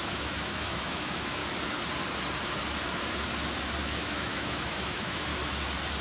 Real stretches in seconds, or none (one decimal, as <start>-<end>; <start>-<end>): 1.4-3.8; 5.3-6.0